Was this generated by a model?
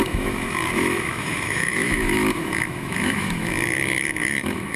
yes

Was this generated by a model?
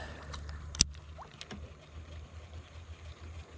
no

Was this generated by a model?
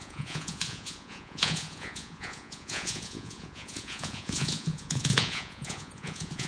yes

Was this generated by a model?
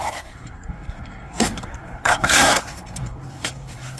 yes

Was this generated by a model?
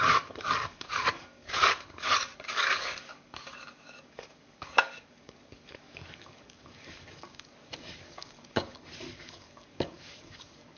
yes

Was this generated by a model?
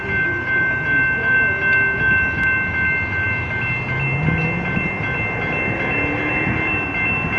no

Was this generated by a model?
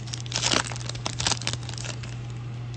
no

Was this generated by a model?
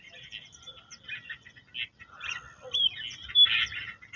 no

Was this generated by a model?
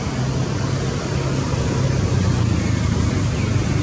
no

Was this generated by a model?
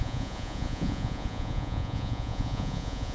yes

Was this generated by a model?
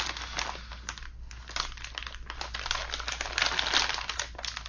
no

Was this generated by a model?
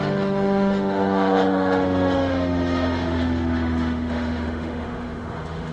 yes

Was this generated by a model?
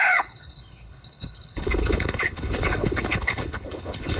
yes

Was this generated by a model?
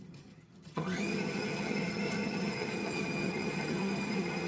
yes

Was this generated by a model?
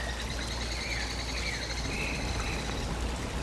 no